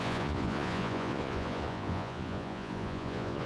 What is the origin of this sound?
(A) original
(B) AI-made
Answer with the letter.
B